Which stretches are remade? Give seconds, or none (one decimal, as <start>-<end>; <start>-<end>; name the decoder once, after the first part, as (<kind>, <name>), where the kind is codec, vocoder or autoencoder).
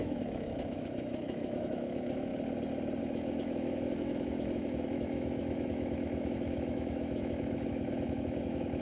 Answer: 0.0-2.3 (autoencoder, DAC-VAE); 3.0-8.8